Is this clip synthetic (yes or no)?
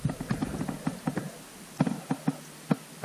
no